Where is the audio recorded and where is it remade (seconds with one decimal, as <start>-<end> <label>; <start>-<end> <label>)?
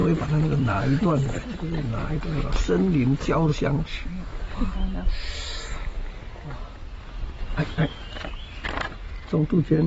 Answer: 0.0-1.4 remade; 1.4-9.9 recorded